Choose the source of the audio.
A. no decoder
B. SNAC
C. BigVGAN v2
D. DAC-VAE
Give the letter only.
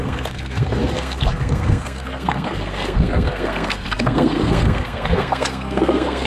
B